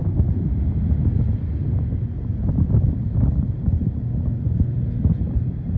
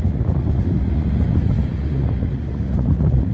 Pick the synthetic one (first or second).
second